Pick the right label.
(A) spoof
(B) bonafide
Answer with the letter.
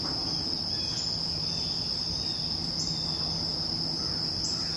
B